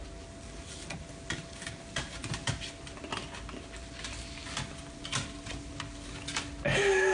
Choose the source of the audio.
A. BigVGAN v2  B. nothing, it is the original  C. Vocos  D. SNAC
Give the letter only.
B